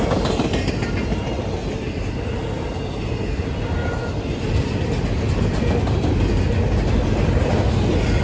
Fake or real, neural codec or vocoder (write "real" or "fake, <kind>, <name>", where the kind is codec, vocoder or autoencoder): real